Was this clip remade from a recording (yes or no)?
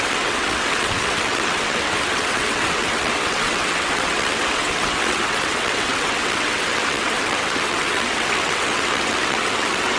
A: yes